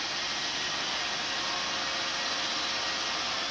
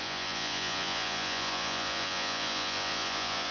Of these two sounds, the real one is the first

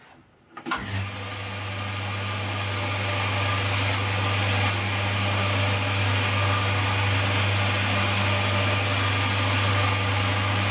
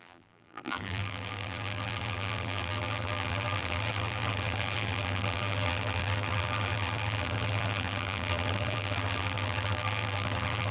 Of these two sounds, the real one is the first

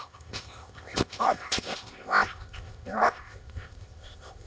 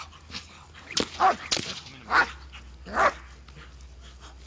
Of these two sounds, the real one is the second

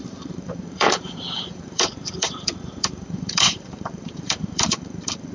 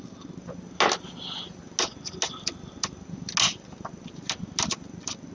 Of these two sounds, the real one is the second